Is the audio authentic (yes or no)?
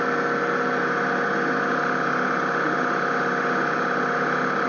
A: yes